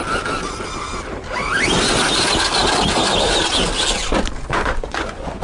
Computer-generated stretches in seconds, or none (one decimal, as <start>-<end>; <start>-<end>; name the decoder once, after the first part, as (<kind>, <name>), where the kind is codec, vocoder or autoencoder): 4.5-5.4 (vocoder, Vocos)